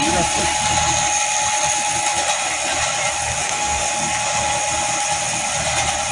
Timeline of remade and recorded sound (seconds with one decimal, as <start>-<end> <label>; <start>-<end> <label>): 0.0-3.4 recorded; 3.4-3.9 remade; 3.9-6.1 recorded